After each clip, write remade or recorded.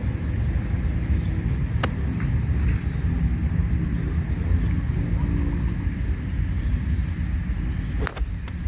recorded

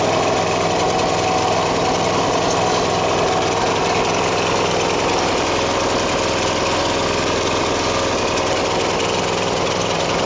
recorded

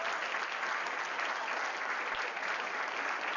recorded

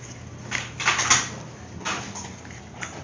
recorded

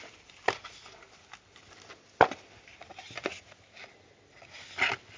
recorded